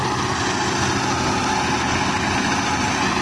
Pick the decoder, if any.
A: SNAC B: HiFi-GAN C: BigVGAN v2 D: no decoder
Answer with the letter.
D